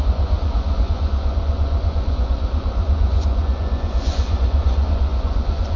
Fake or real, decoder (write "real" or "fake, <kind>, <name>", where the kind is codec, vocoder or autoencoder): fake, vocoder, Vocos